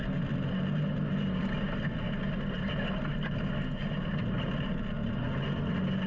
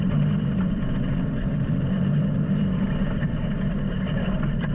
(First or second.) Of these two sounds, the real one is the first